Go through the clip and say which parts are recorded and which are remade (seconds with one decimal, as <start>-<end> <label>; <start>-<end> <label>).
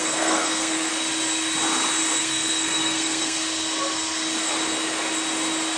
0.0-0.9 remade; 0.9-2.2 recorded; 2.2-3.4 remade; 3.4-5.8 recorded